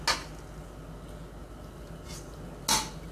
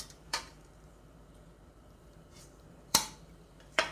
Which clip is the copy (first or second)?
second